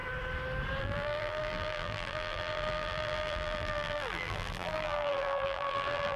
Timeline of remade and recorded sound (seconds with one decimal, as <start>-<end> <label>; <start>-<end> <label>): 0.0-0.8 recorded; 0.8-6.2 remade